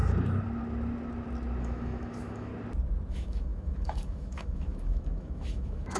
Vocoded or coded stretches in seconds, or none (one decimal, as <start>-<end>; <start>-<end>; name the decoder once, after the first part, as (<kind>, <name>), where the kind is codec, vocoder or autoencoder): 1.6-2.5 (autoencoder, DAC-VAE); 3.1-6.0